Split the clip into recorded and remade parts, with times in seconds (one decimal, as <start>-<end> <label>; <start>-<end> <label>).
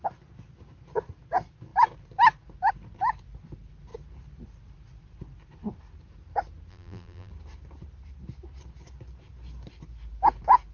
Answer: 0.0-6.7 recorded; 6.7-7.3 remade; 7.3-10.7 recorded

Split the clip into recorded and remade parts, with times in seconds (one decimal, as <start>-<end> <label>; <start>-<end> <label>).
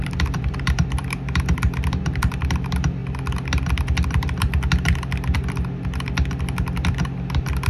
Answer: 0.0-3.0 remade; 3.0-7.3 recorded; 7.3-7.7 remade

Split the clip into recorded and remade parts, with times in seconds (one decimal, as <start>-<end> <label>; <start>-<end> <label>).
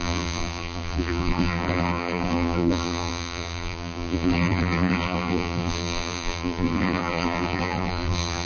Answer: 0.0-8.5 remade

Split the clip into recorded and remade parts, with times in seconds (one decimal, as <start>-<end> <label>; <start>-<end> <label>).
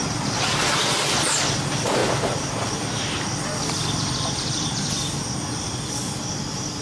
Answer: 0.0-2.0 remade; 2.0-2.7 recorded; 2.7-4.7 remade; 4.7-5.6 recorded; 5.6-6.8 remade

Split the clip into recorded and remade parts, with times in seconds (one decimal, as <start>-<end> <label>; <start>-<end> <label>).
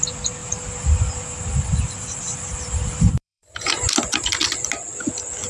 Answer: 0.0-0.4 recorded; 0.4-3.7 remade; 3.7-5.5 recorded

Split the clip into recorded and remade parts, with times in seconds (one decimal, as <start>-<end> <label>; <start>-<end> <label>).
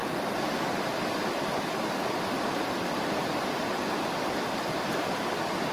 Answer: 0.0-2.2 recorded; 2.2-5.7 remade